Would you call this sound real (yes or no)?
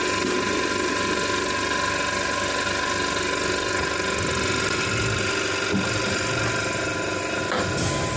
yes